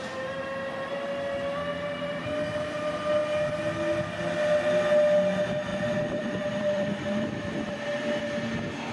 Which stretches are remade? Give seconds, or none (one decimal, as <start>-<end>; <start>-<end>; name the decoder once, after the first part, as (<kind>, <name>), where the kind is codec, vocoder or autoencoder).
5.7-8.2 (vocoder, BigVGAN v2)